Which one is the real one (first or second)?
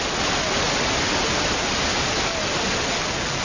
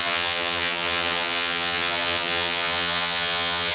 first